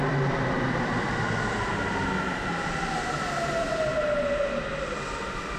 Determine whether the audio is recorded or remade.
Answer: recorded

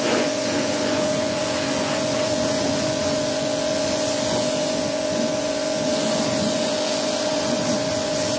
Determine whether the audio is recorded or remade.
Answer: remade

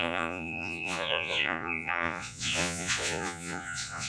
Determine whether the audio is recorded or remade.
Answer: remade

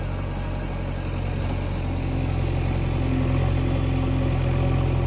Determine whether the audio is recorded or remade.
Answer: recorded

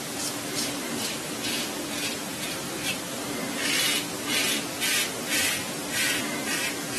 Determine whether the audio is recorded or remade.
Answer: recorded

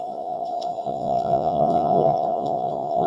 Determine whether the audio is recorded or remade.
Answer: remade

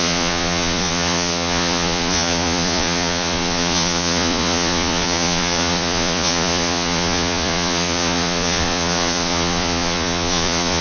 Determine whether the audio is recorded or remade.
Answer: remade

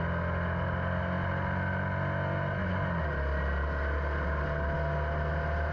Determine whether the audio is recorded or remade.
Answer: recorded